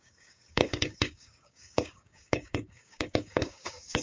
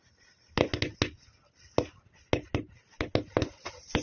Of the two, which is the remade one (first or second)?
first